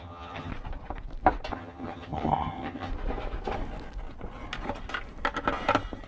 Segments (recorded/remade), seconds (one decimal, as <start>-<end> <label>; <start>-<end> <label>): 0.0-0.5 remade; 0.5-1.5 recorded; 1.5-2.9 remade; 2.9-6.1 recorded